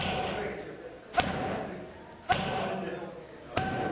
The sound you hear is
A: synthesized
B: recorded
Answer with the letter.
B